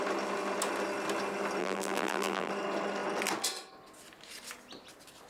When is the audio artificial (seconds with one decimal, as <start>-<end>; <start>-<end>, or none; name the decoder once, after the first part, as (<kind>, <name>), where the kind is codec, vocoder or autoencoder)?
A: 1.6-2.5 (vocoder, BigVGAN v2)